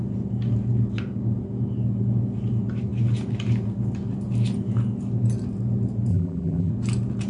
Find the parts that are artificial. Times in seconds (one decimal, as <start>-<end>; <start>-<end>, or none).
6.1-6.7